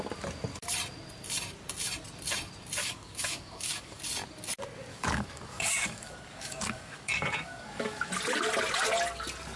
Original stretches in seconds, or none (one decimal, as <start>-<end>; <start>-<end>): 0.0-2.8; 4.0-4.9; 8.1-9.6